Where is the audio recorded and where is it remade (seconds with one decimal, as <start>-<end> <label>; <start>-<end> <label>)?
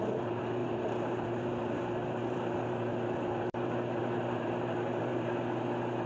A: 0.0-0.6 recorded; 0.6-1.3 remade; 1.3-2.0 recorded; 2.0-2.9 remade; 2.9-4.0 recorded; 4.0-5.4 remade; 5.4-6.1 recorded